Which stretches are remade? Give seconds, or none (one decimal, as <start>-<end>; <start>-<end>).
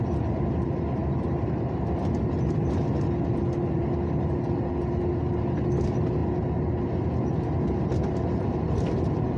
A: none